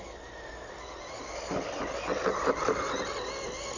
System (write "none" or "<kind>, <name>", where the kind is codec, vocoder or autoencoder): none